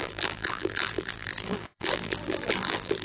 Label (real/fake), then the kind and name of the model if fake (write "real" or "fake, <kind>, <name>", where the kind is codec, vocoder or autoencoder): fake, vocoder, BigVGAN v2